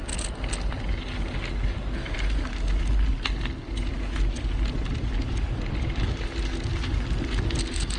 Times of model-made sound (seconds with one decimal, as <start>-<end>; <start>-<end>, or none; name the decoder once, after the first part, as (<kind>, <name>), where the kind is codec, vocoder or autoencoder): none